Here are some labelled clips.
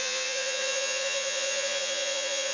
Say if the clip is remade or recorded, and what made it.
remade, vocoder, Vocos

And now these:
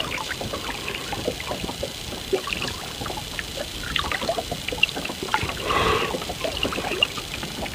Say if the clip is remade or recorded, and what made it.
recorded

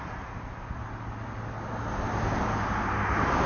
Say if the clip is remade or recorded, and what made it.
recorded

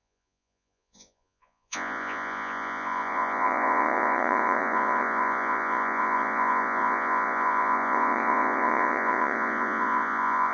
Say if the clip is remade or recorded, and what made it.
remade, vocoder, Vocos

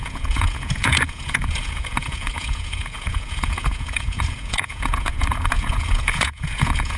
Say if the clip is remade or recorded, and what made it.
remade, vocoder, Vocos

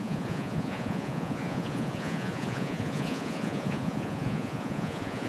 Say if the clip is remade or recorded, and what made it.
remade, vocoder, Vocos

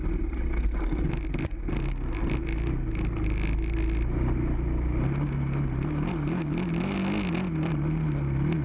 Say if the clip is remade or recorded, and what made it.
recorded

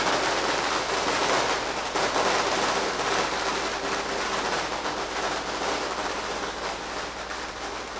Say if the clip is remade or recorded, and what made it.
recorded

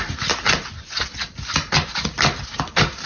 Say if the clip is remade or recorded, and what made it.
recorded